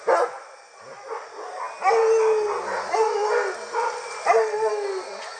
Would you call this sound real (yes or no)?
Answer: yes